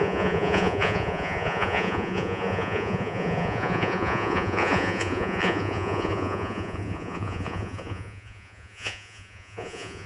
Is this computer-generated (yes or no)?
yes